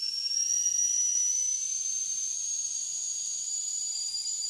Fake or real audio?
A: real